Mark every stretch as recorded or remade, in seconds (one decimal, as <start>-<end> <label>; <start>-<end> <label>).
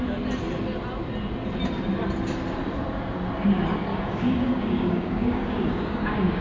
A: 0.0-3.9 recorded; 3.9-6.4 remade